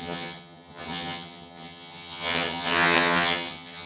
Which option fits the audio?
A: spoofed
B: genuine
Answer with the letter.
A